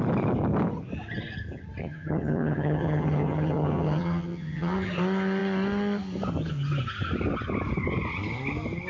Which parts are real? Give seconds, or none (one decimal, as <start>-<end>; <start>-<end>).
0.0-1.8; 4.9-8.9